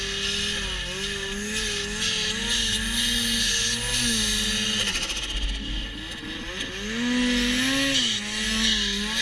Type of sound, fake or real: real